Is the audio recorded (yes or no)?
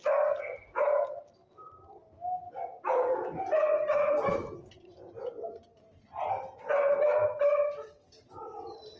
yes